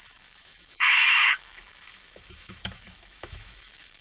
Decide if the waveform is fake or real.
fake